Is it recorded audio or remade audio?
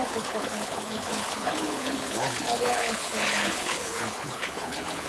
remade